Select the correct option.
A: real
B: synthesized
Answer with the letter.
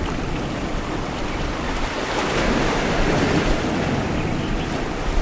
A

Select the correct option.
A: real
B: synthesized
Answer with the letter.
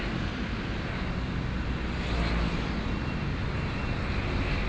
A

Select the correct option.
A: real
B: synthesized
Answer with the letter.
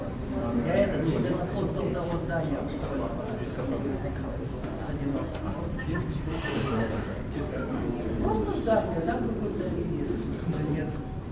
B